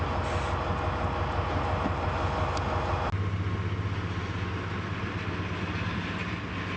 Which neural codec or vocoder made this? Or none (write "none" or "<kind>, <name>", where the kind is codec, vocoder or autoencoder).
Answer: none